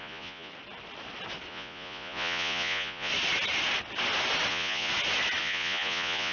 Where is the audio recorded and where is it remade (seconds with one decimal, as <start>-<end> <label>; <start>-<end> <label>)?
0.0-0.5 remade; 0.5-1.5 recorded; 1.5-3.1 remade; 3.1-4.5 recorded; 4.5-4.9 remade; 4.9-5.4 recorded; 5.4-6.3 remade